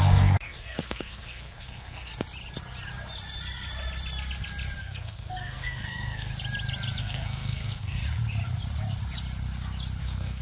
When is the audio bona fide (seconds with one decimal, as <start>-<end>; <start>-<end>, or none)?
2.1-4.8; 6.3-7.0; 8.0-10.0